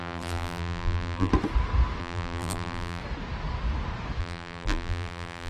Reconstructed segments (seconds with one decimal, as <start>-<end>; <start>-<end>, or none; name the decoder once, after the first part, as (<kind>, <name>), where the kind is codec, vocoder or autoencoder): 0.0-1.3 (vocoder, BigVGAN v2); 2.0-3.0; 4.2-5.5